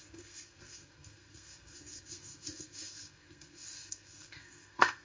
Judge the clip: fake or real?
fake